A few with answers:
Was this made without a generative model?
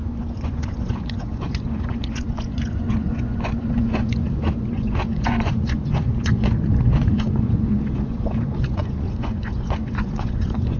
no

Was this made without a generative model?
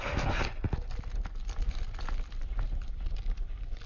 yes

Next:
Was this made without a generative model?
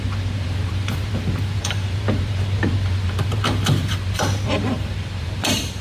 no